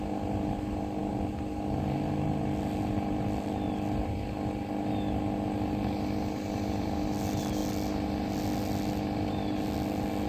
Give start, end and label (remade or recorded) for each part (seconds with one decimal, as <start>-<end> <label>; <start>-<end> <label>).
0.0-1.0 remade; 1.0-5.7 recorded; 5.7-7.6 remade; 7.6-10.3 recorded

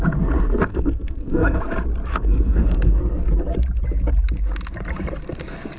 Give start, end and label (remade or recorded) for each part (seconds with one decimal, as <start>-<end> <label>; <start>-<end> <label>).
0.0-0.7 recorded; 0.7-1.6 remade; 1.6-2.1 recorded; 2.1-3.0 remade; 3.0-5.8 recorded